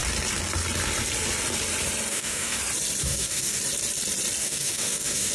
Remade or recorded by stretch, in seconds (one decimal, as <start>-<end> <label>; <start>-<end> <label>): 0.0-2.1 recorded; 2.1-2.6 remade; 2.6-3.0 recorded; 3.0-3.6 remade; 3.6-4.4 recorded; 4.4-5.3 remade